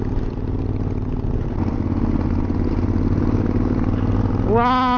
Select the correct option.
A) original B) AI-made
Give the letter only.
A